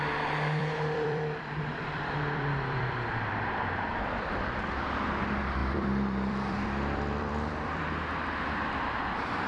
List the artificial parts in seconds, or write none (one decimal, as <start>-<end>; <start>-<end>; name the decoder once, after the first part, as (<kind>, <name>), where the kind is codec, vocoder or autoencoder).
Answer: 0.6-4.6 (vocoder, BigVGAN v2); 5.6-7.8